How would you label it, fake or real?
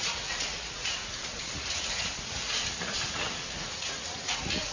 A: fake